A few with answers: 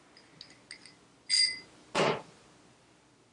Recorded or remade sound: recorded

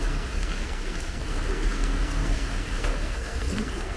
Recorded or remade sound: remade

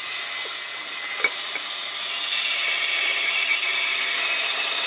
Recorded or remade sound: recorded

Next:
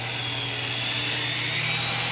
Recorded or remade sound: recorded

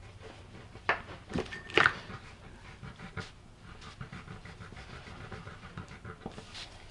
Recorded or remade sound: recorded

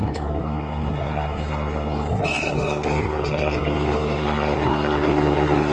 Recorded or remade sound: remade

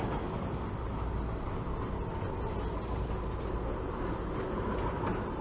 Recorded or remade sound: recorded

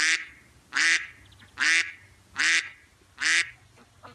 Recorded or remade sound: recorded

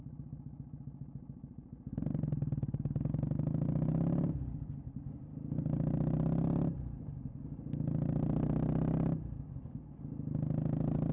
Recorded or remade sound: recorded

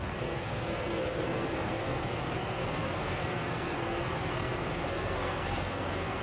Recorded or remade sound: remade